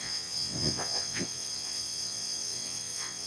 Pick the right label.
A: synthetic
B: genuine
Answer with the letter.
A